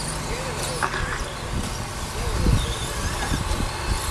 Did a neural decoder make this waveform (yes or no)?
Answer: no